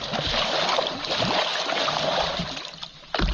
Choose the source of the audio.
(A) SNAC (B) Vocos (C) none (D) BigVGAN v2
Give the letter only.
C